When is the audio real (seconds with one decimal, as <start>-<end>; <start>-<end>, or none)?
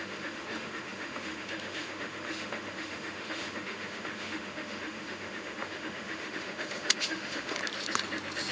7.6-8.5